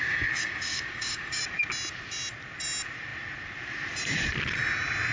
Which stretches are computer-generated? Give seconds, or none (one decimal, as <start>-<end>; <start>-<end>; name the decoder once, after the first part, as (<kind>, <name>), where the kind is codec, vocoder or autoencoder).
0.0-1.4 (codec, DAC)